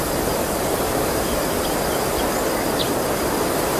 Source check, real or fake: real